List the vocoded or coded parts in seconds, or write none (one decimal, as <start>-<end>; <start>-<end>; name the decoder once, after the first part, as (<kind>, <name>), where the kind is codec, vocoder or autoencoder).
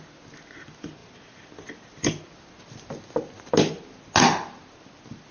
none